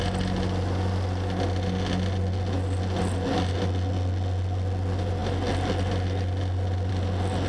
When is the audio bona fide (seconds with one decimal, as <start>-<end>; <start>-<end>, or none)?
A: 0.0-7.5